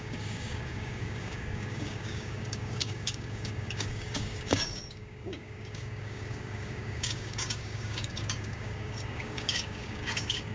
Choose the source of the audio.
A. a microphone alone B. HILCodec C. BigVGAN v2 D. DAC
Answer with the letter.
D